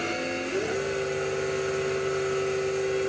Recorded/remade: recorded